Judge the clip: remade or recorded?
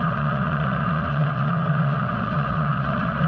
remade